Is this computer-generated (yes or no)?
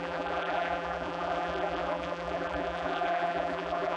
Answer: yes